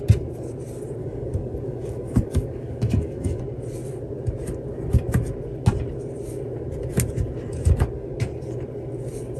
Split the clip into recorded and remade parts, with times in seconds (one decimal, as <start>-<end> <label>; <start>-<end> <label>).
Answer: 0.0-1.0 recorded; 1.0-3.4 remade; 3.4-9.4 recorded